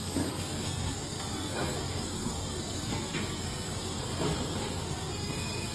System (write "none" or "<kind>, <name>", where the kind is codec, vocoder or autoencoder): codec, SNAC